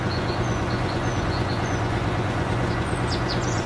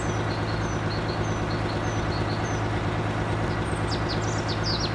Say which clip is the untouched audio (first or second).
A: second